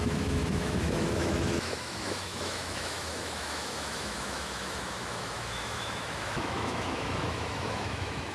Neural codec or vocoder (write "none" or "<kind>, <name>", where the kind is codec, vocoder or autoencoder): autoencoder, DAC-VAE